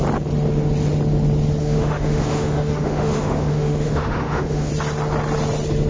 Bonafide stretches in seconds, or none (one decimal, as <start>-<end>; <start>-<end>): 0.0-1.6; 4.7-5.9